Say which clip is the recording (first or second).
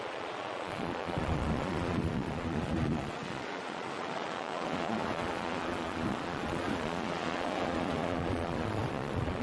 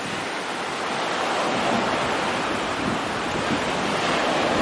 second